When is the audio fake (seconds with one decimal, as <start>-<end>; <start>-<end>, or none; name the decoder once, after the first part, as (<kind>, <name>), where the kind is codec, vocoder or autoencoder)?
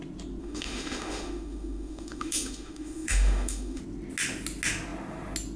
0.4-3.8 (autoencoder, DAC-VAE)